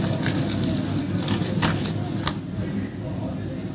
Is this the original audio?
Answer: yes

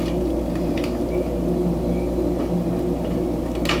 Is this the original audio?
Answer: yes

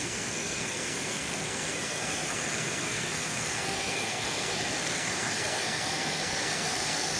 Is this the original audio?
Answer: no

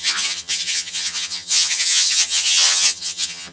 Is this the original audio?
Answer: no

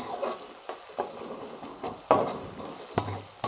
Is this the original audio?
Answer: yes